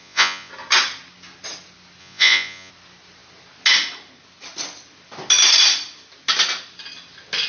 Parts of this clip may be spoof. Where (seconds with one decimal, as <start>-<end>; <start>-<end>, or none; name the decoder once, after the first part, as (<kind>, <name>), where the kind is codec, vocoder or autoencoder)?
0.0-0.5 (vocoder, Vocos); 2.0-2.7